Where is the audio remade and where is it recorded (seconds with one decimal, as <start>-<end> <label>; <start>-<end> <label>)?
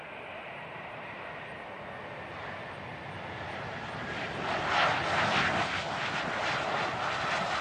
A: 0.0-0.4 recorded; 0.4-1.2 remade; 1.2-7.6 recorded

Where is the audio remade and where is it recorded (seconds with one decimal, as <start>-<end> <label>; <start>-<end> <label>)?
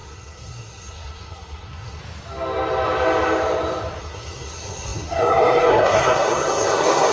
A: 0.0-2.0 remade; 2.0-4.0 recorded; 4.0-7.1 remade